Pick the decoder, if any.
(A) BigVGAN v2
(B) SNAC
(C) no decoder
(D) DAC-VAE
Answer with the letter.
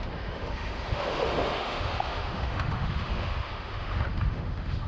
D